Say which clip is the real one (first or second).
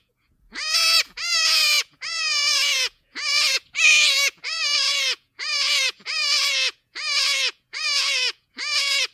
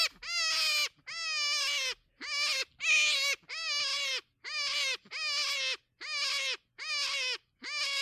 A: second